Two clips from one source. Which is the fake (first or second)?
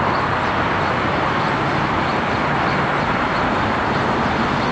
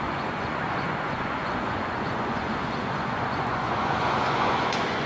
second